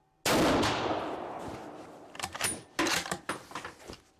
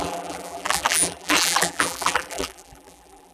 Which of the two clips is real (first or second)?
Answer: first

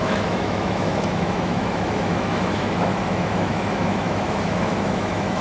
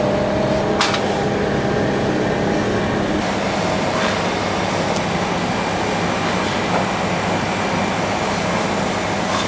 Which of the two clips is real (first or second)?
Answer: second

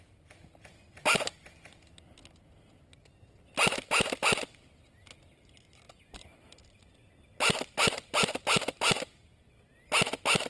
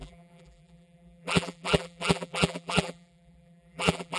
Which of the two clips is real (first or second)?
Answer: first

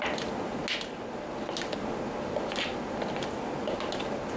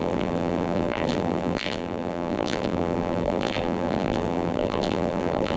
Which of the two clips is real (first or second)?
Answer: first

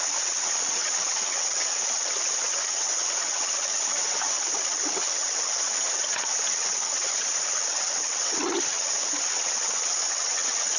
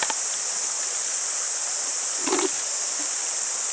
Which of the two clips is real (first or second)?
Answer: second